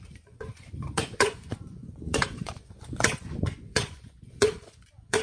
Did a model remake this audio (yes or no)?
yes